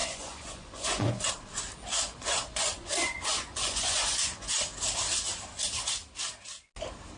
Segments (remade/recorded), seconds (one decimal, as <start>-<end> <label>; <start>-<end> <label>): 0.0-1.3 remade; 1.3-1.9 recorded; 1.9-4.6 remade; 4.6-7.2 recorded